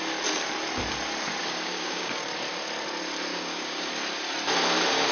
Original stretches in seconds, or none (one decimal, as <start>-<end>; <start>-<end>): 0.0-1.4; 2.2-3.3; 3.9-5.1